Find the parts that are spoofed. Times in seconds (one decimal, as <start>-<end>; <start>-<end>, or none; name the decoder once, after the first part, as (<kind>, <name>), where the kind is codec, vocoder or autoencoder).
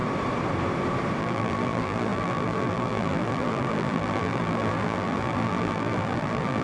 1.2-6.6 (vocoder, BigVGAN v2)